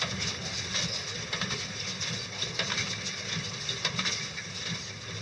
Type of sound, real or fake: real